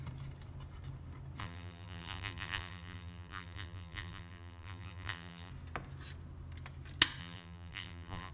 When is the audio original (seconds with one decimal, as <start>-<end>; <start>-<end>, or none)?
0.0-1.4; 5.5-7.2